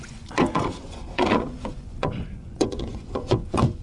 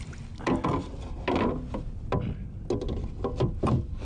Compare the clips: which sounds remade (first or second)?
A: first